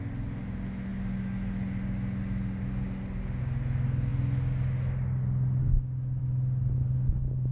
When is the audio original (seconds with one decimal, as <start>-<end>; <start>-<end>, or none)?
0.0-7.5